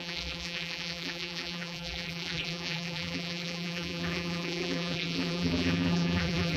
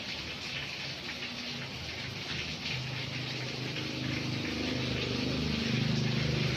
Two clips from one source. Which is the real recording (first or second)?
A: second